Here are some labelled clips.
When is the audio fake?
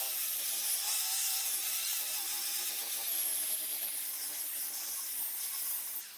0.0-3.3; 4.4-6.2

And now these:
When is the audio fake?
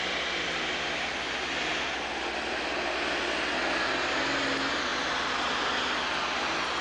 4.9-6.0